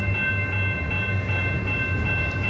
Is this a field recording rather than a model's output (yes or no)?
yes